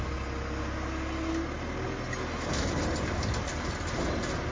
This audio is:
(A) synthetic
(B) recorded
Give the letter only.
B